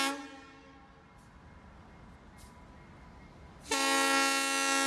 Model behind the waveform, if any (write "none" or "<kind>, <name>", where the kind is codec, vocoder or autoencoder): none